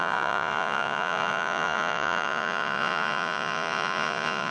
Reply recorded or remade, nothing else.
remade